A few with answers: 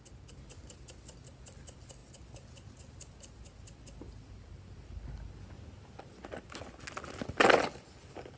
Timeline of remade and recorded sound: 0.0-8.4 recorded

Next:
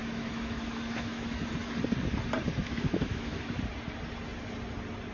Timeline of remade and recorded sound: 0.0-1.4 remade; 1.4-2.6 recorded; 2.6-3.6 remade; 3.6-5.1 recorded

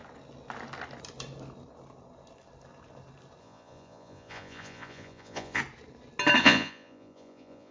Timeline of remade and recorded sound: 0.0-3.4 recorded; 3.4-5.6 remade; 5.6-6.4 recorded; 6.4-7.7 remade

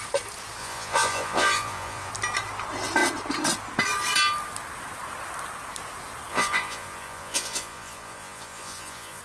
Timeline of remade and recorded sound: 0.0-0.6 recorded; 0.6-2.1 remade; 2.1-6.3 recorded; 6.3-9.2 remade